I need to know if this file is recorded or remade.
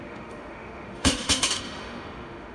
remade